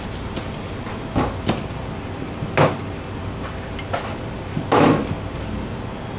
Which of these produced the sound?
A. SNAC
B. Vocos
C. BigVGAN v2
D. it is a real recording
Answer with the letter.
D